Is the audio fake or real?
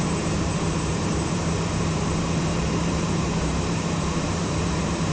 fake